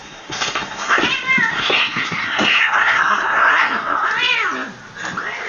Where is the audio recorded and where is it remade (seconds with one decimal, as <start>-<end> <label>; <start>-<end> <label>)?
0.0-1.0 remade; 1.0-1.5 recorded; 1.5-4.1 remade; 4.1-5.5 recorded